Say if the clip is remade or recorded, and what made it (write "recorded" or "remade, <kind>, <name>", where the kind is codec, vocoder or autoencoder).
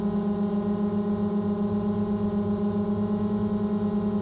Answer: recorded